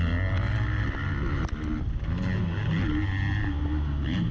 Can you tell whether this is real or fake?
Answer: real